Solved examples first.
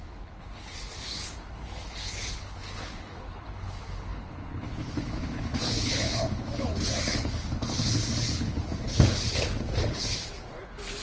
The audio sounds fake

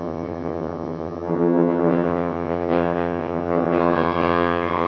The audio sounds fake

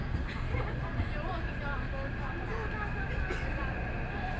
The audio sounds real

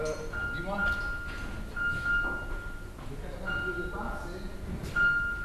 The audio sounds real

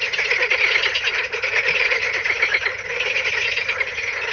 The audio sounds real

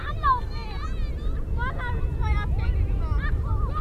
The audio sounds fake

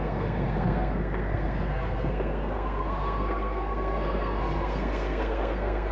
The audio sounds fake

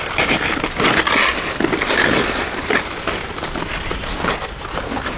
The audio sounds real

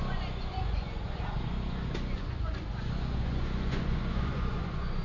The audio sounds fake